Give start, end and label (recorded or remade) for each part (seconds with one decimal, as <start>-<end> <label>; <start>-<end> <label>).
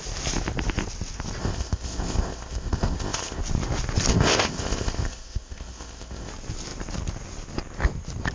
0.0-1.4 recorded; 1.4-3.4 remade; 3.4-4.1 recorded; 4.1-6.3 remade; 6.3-8.3 recorded